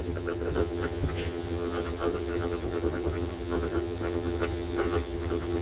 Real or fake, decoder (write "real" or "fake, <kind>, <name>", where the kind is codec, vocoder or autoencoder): fake, vocoder, HiFi-GAN